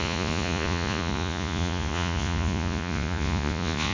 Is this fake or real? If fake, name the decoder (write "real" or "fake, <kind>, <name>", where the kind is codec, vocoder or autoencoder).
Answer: fake, vocoder, Vocos